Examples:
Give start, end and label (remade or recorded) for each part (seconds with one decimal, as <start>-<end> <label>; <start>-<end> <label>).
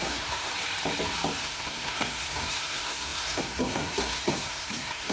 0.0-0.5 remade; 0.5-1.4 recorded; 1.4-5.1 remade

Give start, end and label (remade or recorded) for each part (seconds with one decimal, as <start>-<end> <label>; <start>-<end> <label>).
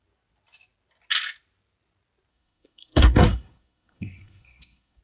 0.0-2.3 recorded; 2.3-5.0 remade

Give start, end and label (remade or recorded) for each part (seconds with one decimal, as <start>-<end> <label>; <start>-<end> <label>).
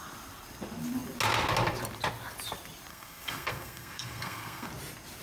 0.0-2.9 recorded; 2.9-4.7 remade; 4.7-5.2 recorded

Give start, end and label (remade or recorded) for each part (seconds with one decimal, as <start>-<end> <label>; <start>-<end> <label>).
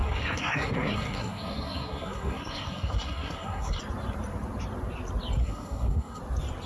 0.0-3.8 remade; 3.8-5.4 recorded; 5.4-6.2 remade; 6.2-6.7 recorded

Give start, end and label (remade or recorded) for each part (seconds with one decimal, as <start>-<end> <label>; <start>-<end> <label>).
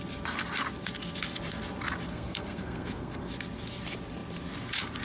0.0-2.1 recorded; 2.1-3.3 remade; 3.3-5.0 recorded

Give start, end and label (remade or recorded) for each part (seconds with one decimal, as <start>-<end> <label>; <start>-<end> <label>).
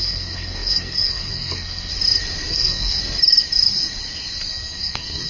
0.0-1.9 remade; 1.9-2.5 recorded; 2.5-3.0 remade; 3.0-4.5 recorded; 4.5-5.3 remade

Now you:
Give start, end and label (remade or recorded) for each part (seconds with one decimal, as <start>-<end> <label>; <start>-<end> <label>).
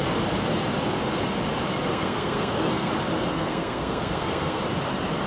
0.0-1.9 recorded; 1.9-2.9 remade; 2.9-3.3 recorded; 3.3-4.6 remade; 4.6-5.3 recorded